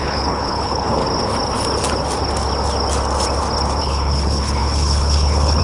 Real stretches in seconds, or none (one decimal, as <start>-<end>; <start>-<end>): 1.0-3.8